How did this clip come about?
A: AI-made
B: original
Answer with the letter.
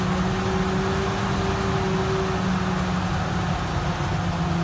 B